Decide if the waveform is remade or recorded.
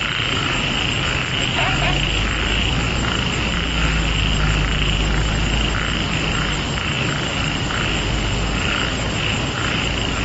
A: recorded